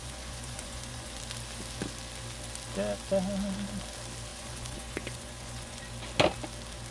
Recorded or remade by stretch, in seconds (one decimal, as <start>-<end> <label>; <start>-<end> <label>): 0.0-1.2 remade; 1.2-4.3 recorded; 4.3-5.8 remade; 5.8-6.9 recorded